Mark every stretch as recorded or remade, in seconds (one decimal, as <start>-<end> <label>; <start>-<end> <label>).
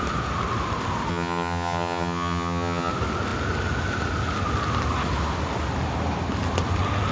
0.0-1.1 recorded; 1.1-2.9 remade; 2.9-7.1 recorded